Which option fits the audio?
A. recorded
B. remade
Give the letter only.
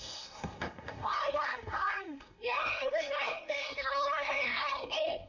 B